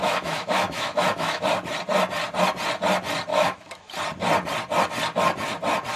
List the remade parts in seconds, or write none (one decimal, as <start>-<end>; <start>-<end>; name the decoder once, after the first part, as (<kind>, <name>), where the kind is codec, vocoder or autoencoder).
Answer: 0.0-1.4 (autoencoder, DAC-VAE); 3.3-3.9